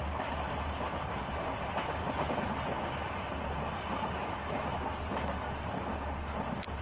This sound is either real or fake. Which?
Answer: real